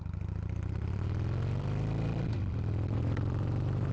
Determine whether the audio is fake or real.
fake